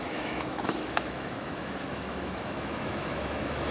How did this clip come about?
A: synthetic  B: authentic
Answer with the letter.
A